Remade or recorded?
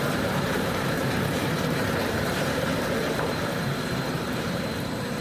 remade